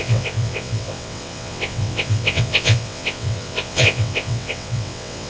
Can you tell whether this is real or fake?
fake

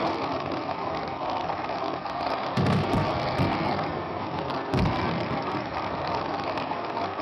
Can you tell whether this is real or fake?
fake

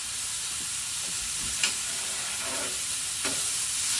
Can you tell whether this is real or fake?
real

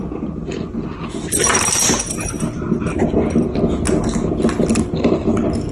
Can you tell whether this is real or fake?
real